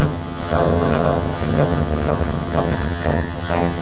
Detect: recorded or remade remade